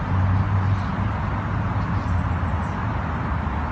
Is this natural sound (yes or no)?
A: yes